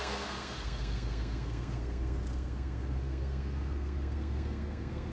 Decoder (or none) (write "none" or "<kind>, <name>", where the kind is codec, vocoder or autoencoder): codec, SNAC